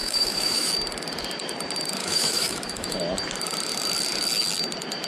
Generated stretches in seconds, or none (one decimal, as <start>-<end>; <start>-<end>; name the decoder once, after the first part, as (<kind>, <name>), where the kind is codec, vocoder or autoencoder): 0.0-0.7 (autoencoder, DAC-VAE); 2.0-3.0